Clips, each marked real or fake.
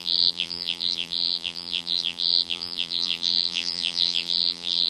fake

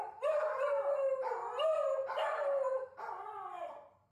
real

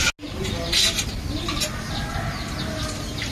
real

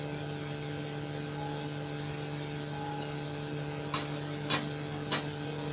real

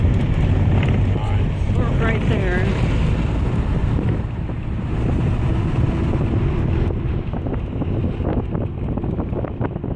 real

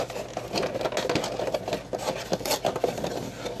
real